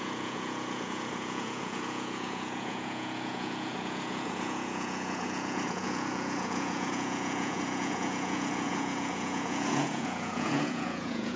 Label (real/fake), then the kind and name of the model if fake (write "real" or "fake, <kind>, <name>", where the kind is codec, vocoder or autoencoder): fake, vocoder, Vocos